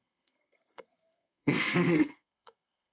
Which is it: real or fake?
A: fake